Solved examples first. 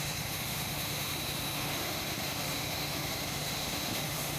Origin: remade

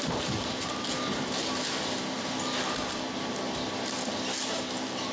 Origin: recorded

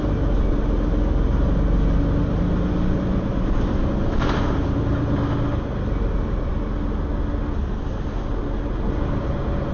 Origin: recorded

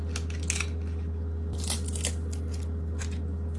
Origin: recorded